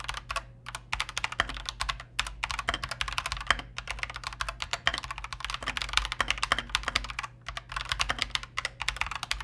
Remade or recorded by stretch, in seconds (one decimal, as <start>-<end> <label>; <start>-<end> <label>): 0.0-9.4 recorded